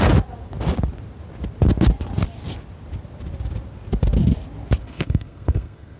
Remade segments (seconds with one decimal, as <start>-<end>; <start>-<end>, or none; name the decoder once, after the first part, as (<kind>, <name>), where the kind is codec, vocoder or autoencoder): 4.8-6.0 (codec, SNAC)